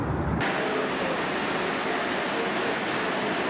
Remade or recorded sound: recorded